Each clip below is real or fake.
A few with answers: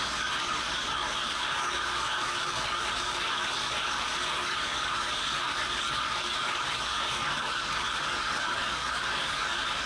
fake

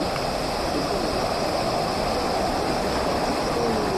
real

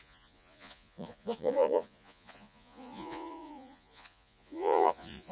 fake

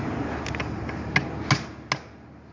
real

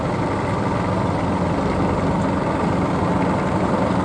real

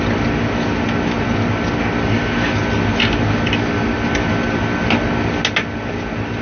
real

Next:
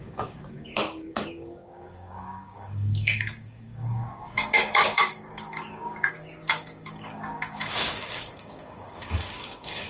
fake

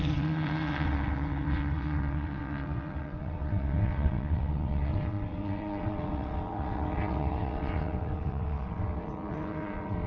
fake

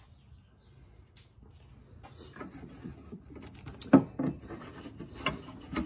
real